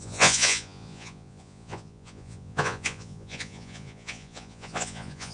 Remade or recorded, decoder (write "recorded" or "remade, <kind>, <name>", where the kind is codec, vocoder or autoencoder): remade, vocoder, Vocos